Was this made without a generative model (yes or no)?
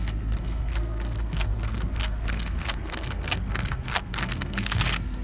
no